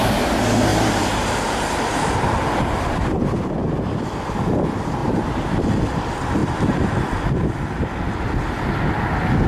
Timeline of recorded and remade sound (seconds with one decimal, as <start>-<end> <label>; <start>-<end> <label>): 0.0-0.7 recorded; 0.7-4.0 remade; 4.0-5.0 recorded; 5.0-5.6 remade; 5.6-6.4 recorded; 6.4-7.0 remade; 7.0-9.5 recorded